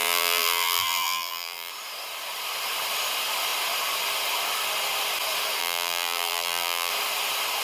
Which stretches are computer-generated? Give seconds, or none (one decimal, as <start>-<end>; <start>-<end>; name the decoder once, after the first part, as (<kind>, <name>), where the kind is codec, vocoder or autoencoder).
0.0-1.7 (vocoder, BigVGAN v2); 5.6-6.9